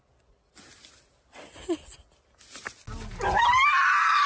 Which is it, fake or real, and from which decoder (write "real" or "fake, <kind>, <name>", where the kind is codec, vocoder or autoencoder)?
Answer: real